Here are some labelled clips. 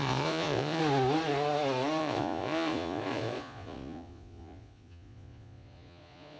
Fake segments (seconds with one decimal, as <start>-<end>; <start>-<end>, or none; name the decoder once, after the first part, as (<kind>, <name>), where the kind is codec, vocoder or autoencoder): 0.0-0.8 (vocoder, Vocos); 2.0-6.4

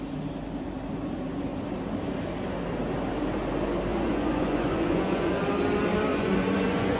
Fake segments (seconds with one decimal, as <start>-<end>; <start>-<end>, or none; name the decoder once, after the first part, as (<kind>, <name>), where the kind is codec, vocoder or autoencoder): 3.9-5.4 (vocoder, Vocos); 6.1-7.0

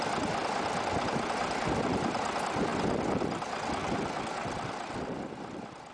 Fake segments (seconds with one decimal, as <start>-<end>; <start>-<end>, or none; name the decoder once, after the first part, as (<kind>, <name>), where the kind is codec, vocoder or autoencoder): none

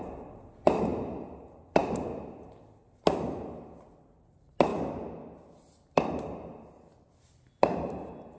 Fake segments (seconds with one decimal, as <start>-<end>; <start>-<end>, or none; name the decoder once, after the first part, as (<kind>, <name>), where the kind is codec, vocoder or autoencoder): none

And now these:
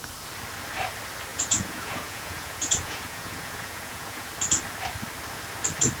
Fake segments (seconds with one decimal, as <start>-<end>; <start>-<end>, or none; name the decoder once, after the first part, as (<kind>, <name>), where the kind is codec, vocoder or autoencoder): 1.3-4.3 (vocoder, Vocos)

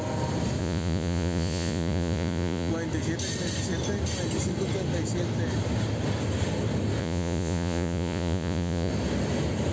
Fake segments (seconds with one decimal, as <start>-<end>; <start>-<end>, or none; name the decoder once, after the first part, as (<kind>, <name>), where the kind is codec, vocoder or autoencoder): 0.6-2.7 (vocoder, Vocos); 7.0-8.9

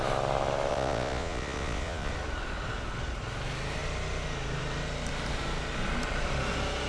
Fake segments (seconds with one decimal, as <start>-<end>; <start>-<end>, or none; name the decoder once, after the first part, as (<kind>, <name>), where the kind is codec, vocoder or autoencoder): 0.7-2.1 (vocoder, Vocos)